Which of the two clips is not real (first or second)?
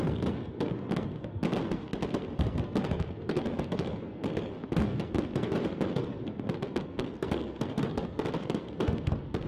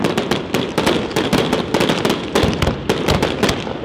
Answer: first